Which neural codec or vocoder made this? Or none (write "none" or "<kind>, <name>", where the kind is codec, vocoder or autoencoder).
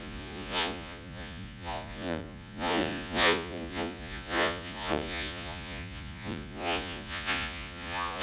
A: vocoder, Vocos